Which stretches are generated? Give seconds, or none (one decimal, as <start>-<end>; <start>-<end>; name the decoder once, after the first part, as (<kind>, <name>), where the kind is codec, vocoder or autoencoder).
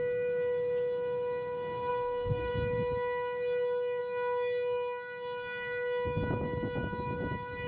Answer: 1.9-2.5 (codec, SNAC)